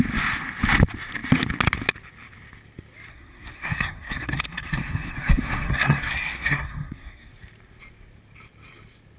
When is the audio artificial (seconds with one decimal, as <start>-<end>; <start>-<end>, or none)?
3.1-7.3